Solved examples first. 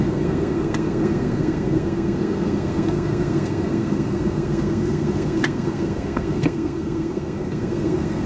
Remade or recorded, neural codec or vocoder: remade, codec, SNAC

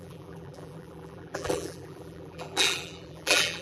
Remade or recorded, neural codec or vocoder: remade, vocoder, BigVGAN v2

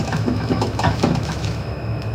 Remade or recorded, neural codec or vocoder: remade, autoencoder, DAC-VAE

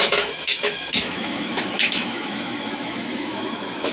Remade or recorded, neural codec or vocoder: remade, autoencoder, DAC-VAE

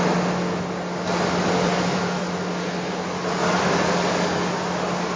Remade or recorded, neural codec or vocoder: recorded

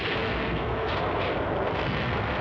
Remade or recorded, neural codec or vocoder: remade, codec, SNAC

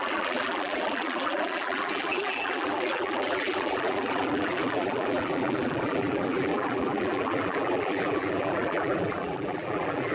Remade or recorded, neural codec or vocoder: remade, vocoder, BigVGAN v2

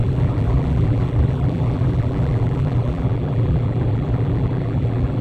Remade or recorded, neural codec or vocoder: remade, vocoder, BigVGAN v2